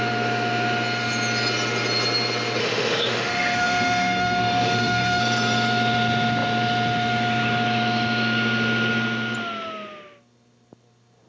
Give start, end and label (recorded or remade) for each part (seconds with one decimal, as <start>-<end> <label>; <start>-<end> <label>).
0.0-2.6 recorded; 2.6-5.2 remade; 5.2-11.3 recorded